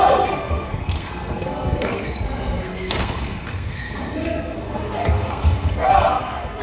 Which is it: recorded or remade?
remade